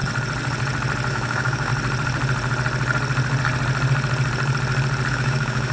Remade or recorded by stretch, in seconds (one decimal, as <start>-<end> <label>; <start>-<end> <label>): 0.0-1.1 recorded; 1.1-1.7 remade; 1.7-5.1 recorded; 5.1-5.7 remade